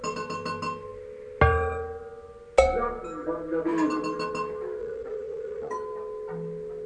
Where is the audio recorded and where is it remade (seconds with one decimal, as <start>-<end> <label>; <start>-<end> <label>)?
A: 0.0-4.8 recorded; 4.8-5.7 remade; 5.7-6.9 recorded